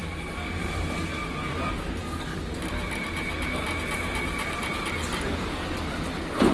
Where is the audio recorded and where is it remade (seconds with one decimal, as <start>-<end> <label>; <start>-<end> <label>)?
0.0-6.5 recorded